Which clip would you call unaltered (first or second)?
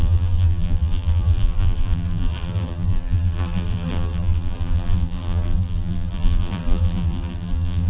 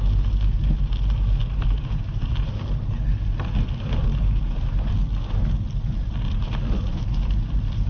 second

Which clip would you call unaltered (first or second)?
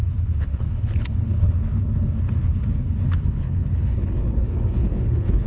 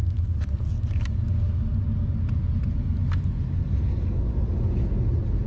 second